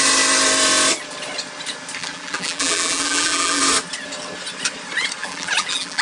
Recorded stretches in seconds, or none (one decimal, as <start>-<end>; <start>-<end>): 0.0-2.0; 3.6-5.2